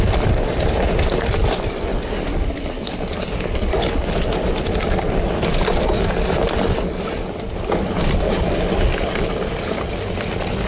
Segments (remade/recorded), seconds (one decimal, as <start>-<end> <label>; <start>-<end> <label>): 0.0-10.7 recorded